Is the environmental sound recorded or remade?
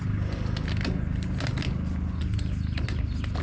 recorded